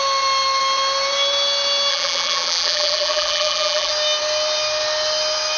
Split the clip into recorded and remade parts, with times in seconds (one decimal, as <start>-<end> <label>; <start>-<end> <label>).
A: 0.0-1.9 recorded; 1.9-3.9 remade; 3.9-5.6 recorded